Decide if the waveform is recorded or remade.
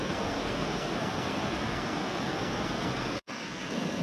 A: remade